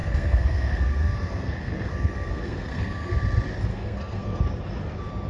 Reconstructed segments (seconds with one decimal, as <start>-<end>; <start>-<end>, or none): 0.0-3.2; 3.7-4.4